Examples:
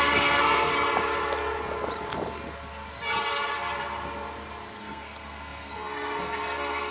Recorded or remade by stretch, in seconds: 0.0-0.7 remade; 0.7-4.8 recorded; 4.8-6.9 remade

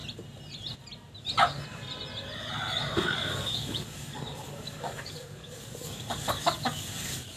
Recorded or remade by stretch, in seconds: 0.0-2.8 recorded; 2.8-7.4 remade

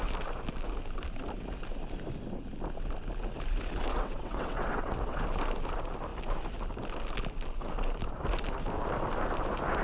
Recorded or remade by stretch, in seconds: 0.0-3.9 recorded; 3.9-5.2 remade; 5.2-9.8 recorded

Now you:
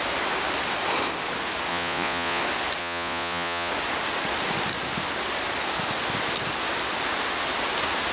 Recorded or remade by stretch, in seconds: 0.0-1.7 recorded; 1.7-2.4 remade; 2.4-2.8 recorded; 2.8-3.7 remade; 3.7-8.1 recorded

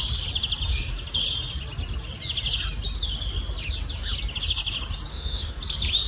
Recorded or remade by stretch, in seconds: 0.0-5.1 recorded; 5.1-5.6 remade; 5.6-6.1 recorded